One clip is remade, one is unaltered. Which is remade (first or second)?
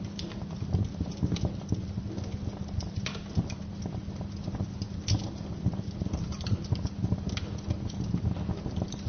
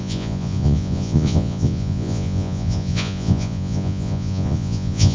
second